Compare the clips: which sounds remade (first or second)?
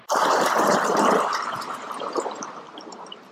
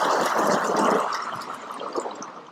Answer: first